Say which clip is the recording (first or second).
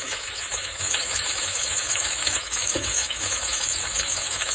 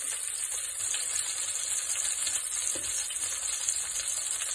second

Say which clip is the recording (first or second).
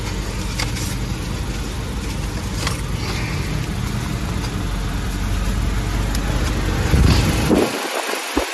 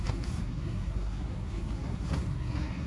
first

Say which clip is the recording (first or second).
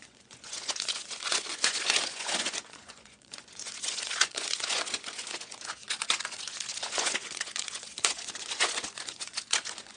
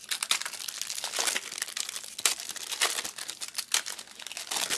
second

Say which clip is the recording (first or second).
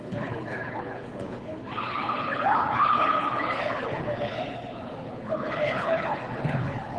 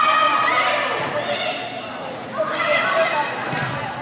second